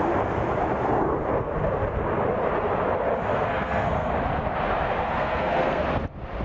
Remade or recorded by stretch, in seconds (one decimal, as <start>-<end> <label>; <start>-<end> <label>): 0.0-3.3 recorded; 3.3-4.1 remade; 4.1-5.0 recorded; 5.0-5.8 remade; 5.8-6.4 recorded